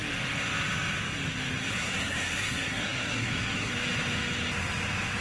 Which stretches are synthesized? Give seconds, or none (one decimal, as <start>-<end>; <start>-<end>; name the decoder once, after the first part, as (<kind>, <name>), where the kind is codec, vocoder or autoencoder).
1.6-3.7 (codec, SNAC)